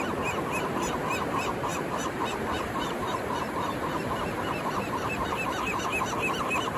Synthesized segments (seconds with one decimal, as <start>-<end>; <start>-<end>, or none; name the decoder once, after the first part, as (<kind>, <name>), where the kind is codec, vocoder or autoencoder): 1.7-5.8 (vocoder, BigVGAN v2)

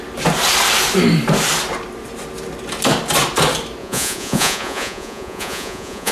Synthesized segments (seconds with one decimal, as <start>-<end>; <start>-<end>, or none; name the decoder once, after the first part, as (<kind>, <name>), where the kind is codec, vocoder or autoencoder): 3.8-6.1 (vocoder, Vocos)

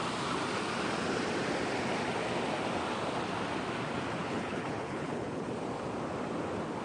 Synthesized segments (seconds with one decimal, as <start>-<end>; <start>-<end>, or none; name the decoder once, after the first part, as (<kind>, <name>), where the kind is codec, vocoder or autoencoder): 4.2-5.5 (codec, HILCodec)

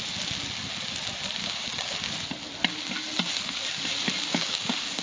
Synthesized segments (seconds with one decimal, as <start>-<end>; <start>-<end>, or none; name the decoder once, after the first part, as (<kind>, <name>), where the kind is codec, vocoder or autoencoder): 1.4-2.1 (codec, DAC); 4.3-5.0

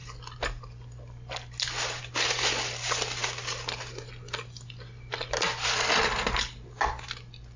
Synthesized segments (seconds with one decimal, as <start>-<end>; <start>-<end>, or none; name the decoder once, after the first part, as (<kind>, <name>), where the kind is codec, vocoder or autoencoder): none

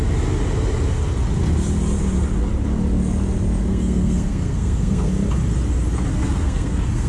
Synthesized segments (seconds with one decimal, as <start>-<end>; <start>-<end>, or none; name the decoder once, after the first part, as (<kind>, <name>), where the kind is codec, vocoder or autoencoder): 3.7-5.1 (codec, SNAC); 6.1-7.1

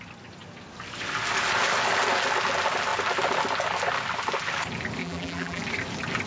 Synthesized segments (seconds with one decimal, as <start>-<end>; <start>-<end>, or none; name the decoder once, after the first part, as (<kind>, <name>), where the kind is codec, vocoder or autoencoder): 5.0-5.6 (vocoder, BigVGAN v2)

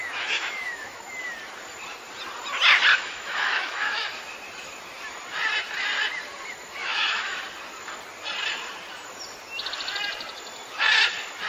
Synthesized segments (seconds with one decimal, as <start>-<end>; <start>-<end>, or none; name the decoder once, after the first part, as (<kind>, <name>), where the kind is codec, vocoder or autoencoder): 0.0-1.0 (autoencoder, DAC-VAE); 2.9-4.2; 6.8-7.4